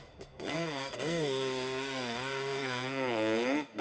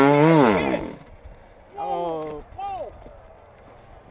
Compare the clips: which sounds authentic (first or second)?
second